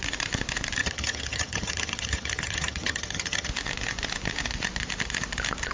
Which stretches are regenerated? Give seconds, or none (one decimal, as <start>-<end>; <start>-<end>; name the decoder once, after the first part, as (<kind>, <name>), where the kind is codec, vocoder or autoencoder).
0.8-3.5 (vocoder, HiFi-GAN)